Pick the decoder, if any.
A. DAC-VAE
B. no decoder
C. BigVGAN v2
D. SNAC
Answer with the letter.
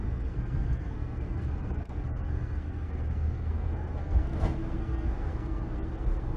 D